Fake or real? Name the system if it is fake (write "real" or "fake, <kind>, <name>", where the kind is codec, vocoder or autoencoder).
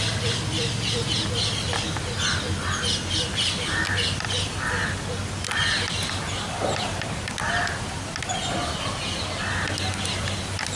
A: real